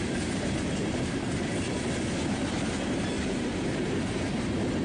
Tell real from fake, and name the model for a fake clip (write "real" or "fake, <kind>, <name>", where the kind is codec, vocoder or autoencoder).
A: real